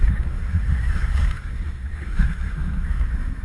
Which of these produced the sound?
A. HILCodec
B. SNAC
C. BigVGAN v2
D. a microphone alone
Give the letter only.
B